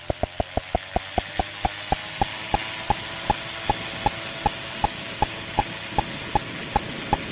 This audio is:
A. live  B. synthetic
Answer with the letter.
A